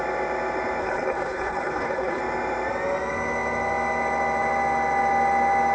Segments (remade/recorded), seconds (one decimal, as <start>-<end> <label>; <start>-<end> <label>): 0.0-0.8 recorded; 0.8-2.2 remade; 2.2-5.7 recorded